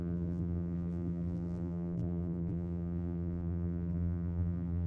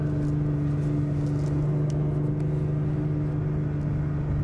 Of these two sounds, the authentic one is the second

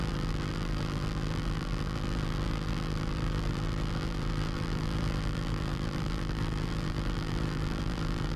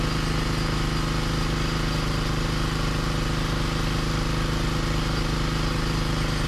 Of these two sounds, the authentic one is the second